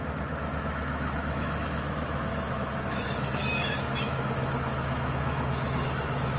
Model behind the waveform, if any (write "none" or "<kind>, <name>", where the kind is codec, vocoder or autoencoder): autoencoder, DAC-VAE